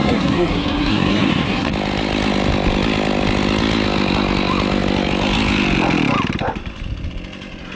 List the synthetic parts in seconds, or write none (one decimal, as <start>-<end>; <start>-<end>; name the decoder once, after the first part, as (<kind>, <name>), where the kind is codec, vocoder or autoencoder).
0.0-1.7 (codec, SNAC)